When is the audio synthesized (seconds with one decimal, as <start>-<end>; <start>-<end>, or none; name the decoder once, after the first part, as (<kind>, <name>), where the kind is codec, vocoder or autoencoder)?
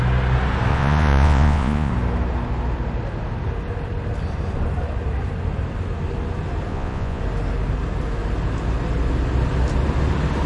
0.7-1.9 (vocoder, Vocos); 6.7-7.2